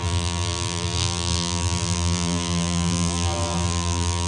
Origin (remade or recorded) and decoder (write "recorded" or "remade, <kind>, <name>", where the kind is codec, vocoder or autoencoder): remade, vocoder, BigVGAN v2